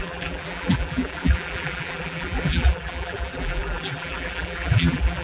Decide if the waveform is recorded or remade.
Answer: remade